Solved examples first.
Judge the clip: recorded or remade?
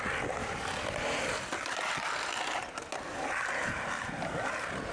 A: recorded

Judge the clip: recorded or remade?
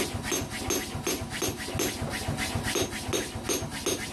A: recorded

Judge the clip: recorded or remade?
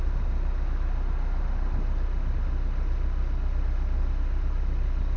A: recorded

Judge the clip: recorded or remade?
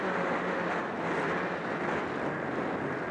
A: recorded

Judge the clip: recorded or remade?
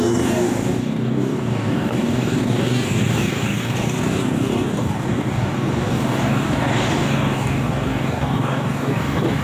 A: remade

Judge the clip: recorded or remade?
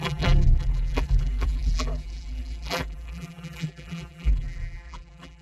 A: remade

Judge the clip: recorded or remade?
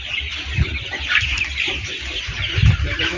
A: recorded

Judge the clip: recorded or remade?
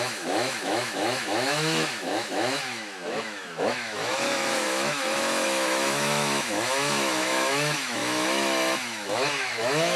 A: remade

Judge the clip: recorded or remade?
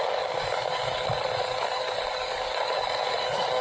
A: remade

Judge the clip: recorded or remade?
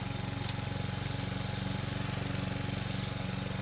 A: recorded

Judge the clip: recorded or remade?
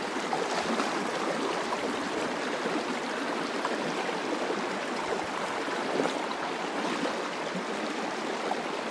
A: remade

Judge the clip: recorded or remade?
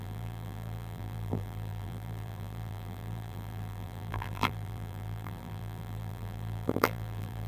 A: remade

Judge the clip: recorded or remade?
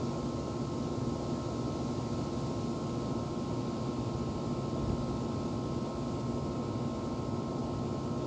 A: recorded